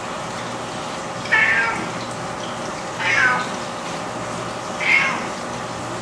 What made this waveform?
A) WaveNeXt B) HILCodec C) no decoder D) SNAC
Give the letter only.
C